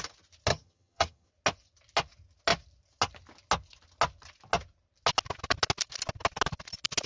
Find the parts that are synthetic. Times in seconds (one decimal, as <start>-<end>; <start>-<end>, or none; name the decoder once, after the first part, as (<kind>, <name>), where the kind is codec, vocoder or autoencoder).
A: 0.5-1.3 (vocoder, HiFi-GAN)